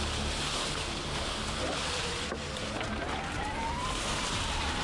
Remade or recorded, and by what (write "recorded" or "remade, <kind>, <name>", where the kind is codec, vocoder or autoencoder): recorded